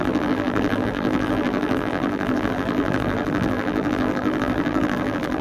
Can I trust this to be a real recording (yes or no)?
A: no